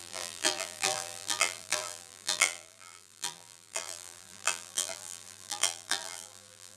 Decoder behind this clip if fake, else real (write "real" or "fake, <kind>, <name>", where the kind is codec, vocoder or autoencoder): fake, vocoder, BigVGAN v2